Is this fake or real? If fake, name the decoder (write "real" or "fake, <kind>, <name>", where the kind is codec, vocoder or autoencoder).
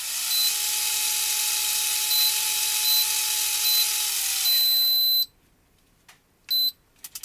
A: real